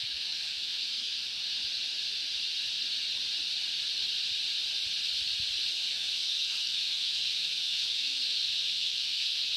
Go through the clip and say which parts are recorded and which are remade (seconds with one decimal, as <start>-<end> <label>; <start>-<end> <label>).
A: 0.0-1.4 remade; 1.4-5.7 recorded; 5.7-9.6 remade